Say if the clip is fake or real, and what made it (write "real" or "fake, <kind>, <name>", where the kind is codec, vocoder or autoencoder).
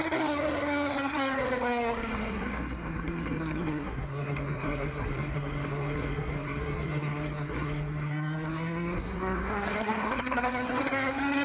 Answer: fake, codec, SNAC